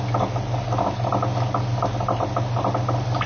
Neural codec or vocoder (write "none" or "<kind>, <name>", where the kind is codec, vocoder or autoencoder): none